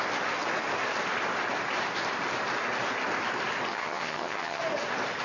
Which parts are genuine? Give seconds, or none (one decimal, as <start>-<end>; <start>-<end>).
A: 0.0-3.7; 4.6-5.2